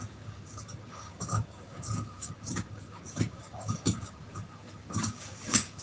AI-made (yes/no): yes